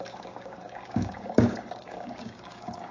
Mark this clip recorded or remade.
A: remade